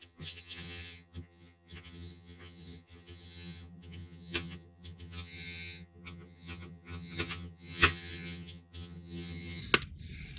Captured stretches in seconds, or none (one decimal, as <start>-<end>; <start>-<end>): 9.6-10.4